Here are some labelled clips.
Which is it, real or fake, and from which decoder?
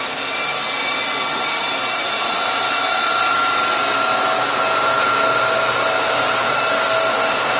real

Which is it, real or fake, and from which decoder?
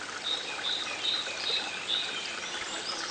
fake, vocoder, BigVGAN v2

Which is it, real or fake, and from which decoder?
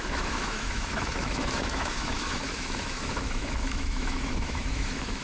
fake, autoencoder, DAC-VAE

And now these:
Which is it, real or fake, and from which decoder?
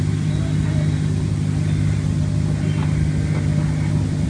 real